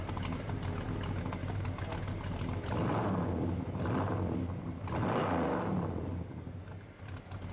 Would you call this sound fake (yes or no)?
no